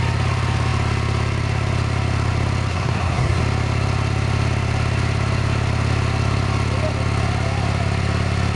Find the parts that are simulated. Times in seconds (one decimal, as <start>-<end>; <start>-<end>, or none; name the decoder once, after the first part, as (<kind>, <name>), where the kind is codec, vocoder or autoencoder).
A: 2.7-3.4 (codec, SNAC)

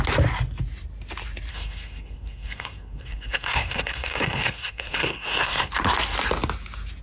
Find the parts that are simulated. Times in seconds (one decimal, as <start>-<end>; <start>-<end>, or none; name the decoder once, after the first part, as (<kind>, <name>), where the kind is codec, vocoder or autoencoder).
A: 1.5-5.7 (codec, SNAC)

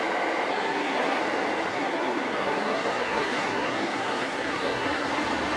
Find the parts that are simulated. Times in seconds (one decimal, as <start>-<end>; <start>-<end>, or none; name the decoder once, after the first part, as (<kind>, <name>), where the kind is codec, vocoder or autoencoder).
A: 0.5-1.2 (codec, SNAC); 1.7-5.1